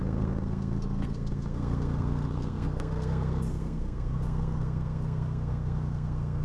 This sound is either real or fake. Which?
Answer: fake